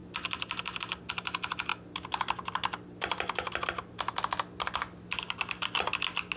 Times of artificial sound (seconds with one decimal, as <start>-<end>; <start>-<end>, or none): none